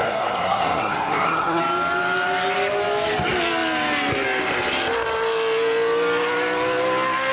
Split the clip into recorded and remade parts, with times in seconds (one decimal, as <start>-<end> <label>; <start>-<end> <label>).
0.0-1.6 remade; 1.6-7.3 recorded

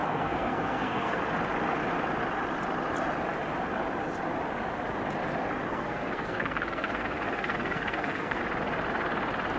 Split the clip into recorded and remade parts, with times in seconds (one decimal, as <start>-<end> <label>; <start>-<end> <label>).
0.0-1.2 remade; 1.2-5.7 recorded; 5.7-8.4 remade; 8.4-9.6 recorded

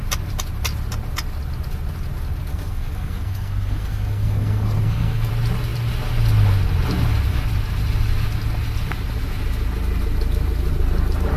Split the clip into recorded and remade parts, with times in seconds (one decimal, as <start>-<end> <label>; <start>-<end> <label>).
0.0-2.5 recorded; 2.5-5.3 remade; 5.3-11.4 recorded

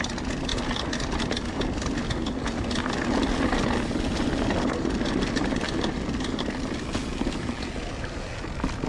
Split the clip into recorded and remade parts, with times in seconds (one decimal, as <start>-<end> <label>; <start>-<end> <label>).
0.0-8.9 recorded

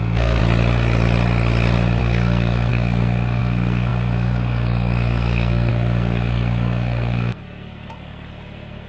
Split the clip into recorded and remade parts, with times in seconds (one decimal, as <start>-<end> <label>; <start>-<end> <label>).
0.0-0.4 remade; 0.4-2.0 recorded; 2.0-8.9 remade

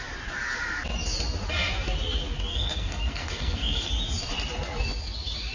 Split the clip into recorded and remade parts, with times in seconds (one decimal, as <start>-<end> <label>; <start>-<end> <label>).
0.0-2.5 recorded; 2.5-3.9 remade; 3.9-5.5 recorded